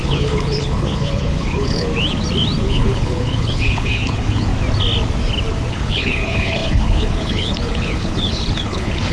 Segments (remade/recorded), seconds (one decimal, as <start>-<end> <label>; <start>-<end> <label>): 0.0-1.9 remade; 1.9-2.6 recorded; 2.6-4.5 remade; 4.5-5.7 recorded; 5.7-9.1 remade